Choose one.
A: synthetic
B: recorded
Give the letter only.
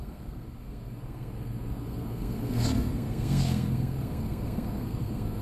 A